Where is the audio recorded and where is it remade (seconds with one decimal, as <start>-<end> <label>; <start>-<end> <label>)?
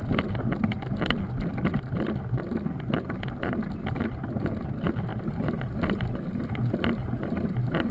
0.0-7.9 recorded